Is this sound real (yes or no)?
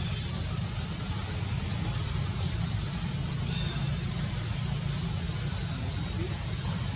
yes